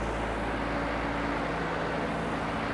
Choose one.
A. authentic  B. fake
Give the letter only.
A